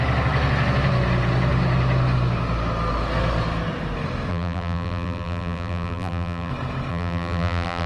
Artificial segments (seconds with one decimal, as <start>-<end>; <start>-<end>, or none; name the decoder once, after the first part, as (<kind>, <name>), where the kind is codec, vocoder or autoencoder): 4.3-6.5 (vocoder, BigVGAN v2); 6.9-7.9